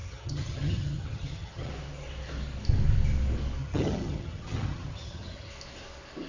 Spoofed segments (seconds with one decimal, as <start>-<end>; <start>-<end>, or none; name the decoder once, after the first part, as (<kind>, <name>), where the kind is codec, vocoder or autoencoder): 0.0-1.7 (vocoder, HiFi-GAN); 3.6-5.5